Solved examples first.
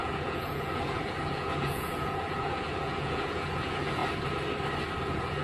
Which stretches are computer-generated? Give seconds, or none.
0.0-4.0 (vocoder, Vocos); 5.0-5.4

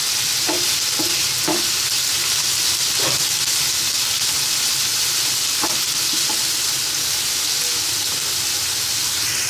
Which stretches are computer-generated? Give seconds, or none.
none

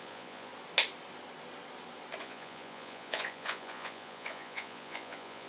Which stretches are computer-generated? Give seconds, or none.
0.0-0.5 (vocoder, Vocos); 2.2-5.5

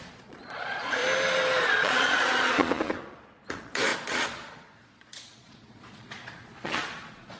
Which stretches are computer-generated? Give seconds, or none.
0.0-1.0 (vocoder, Vocos); 1.7-7.4

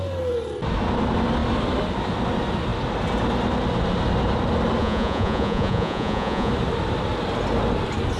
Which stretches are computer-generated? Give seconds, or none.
4.8-6.5 (vocoder, Vocos)